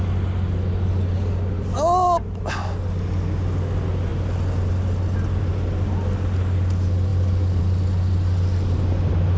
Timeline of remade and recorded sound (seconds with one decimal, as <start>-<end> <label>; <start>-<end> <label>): 0.0-9.4 recorded